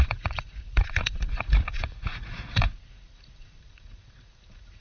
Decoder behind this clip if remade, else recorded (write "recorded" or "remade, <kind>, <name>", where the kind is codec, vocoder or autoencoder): remade, vocoder, Vocos